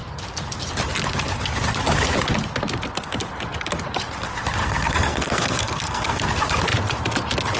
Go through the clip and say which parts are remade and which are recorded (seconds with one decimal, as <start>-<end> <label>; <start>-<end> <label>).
0.0-4.6 recorded; 4.6-6.3 remade; 6.3-7.6 recorded